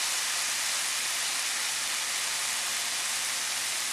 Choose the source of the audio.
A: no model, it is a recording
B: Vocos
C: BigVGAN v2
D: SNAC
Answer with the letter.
A